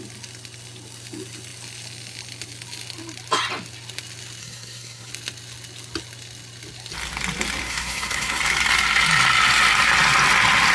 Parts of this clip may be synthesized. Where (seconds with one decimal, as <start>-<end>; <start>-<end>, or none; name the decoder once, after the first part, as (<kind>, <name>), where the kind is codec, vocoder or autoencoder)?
4.4-5.1 (codec, SNAC); 7.6-8.4

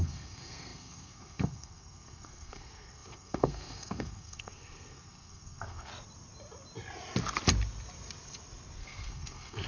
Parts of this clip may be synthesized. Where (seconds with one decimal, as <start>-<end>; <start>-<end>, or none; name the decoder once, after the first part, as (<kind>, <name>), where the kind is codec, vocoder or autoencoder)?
0.0-5.9 (codec, SNAC); 8.8-9.7

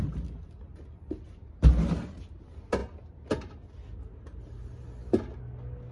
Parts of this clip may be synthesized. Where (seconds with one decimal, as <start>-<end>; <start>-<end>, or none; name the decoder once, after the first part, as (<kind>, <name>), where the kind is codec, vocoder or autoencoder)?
none

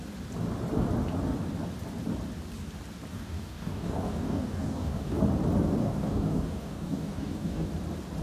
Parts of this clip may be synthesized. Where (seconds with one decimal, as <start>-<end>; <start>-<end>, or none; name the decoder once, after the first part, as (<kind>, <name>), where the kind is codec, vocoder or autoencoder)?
3.1-5.2 (codec, DAC); 5.8-7.7

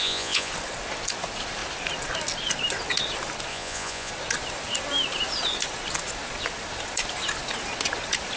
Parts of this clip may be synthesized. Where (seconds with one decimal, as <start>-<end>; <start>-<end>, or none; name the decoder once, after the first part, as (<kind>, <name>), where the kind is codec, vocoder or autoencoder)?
0.0-0.5 (vocoder, Vocos); 3.5-4.1

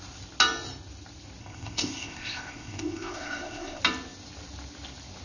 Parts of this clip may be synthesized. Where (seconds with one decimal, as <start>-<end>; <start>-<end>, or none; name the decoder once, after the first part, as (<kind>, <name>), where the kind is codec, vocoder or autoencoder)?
1.4-3.8 (codec, ZipCodec)